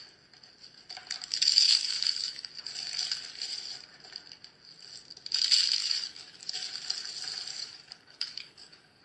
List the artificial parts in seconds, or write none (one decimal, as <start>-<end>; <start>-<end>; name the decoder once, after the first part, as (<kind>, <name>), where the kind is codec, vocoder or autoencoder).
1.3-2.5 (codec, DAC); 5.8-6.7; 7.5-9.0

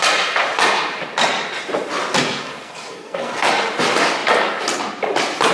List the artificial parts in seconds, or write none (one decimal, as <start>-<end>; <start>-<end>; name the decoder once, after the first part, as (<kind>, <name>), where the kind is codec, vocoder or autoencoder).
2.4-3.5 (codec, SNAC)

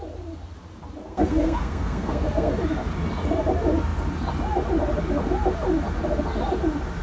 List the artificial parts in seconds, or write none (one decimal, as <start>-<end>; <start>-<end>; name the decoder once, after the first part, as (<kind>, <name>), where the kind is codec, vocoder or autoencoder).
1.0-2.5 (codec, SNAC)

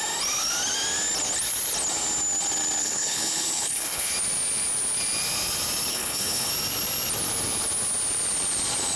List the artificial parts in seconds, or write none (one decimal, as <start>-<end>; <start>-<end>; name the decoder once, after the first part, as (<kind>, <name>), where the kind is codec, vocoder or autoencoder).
2.8-4.1 (codec, HILCodec); 5.9-6.5

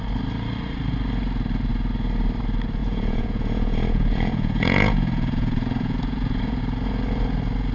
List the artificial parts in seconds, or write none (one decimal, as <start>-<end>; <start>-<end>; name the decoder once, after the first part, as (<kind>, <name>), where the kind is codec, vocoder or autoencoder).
2.8-6.6 (vocoder, Vocos)

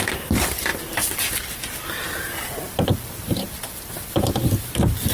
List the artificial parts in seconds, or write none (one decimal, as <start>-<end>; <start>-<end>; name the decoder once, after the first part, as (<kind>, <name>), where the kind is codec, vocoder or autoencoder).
0.0-5.1 (vocoder, BigVGAN v2)